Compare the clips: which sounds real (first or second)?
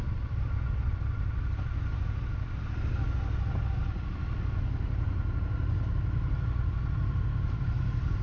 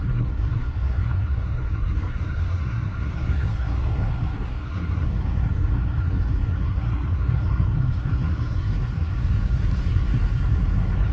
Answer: first